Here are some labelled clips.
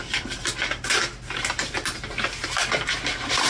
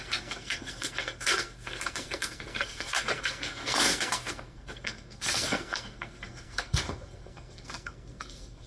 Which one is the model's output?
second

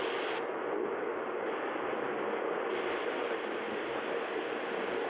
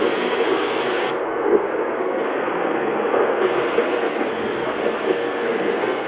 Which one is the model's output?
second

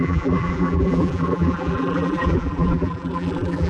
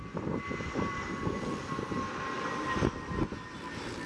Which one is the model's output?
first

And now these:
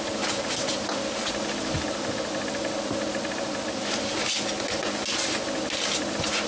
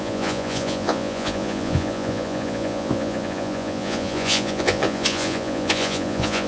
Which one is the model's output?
second